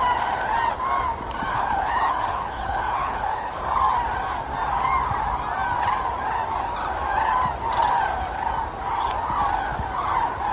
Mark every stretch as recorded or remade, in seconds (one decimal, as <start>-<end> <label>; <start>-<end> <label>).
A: 0.0-1.5 recorded; 1.5-3.6 remade; 3.6-10.5 recorded